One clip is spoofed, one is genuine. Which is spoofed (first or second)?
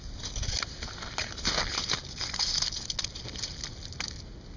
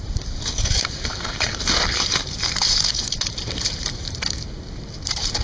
second